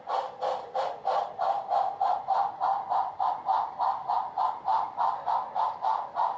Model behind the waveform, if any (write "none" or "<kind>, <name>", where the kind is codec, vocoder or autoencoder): none